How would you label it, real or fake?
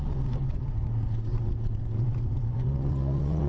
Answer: fake